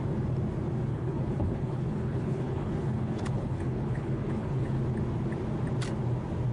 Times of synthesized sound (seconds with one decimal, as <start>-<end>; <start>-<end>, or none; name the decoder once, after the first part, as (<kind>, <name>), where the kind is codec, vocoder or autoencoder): 0.9-4.8 (codec, HILCodec)

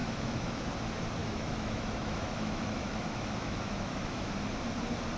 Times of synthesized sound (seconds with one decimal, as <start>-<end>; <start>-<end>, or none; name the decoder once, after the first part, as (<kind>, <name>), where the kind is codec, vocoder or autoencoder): 0.0-0.6 (autoencoder, DAC-VAE); 1.2-4.3

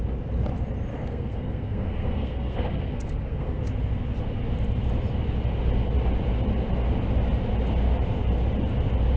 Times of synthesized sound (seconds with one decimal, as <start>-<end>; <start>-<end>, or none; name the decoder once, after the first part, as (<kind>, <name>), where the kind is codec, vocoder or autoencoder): 0.9-3.6 (codec, SNAC)

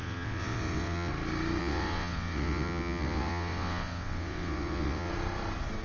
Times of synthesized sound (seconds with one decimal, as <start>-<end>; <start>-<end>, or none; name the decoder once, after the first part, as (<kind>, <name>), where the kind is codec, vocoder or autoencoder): 0.0-1.1 (vocoder, WaveNeXt); 1.6-5.1

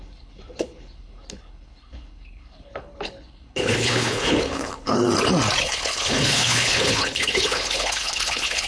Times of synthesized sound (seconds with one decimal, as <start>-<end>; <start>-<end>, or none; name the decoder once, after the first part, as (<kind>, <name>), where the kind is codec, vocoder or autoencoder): 0.0-5.1 (codec, HILCodec); 5.6-8.7

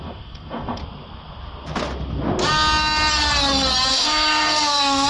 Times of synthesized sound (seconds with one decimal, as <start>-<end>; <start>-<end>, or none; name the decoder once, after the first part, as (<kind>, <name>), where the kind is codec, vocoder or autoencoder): 0.0-0.8 (codec, SNAC); 3.9-5.1

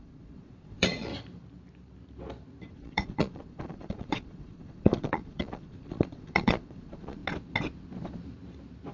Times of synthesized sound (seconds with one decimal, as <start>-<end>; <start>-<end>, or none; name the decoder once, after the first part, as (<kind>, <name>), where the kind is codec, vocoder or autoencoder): 0.0-1.1 (vocoder, Vocos); 2.7-7.2

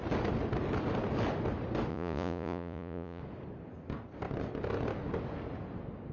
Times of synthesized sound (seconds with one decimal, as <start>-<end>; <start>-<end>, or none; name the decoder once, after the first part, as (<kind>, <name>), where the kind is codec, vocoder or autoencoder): 1.9-3.2 (vocoder, Vocos)